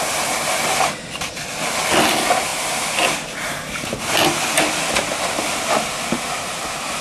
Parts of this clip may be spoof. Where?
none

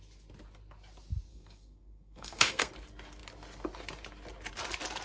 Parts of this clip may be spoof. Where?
1.3-2.7 (codec, SNAC)

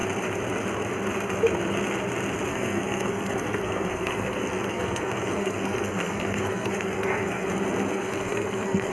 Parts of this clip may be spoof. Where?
2.5-7.5 (codec, SNAC); 7.9-8.9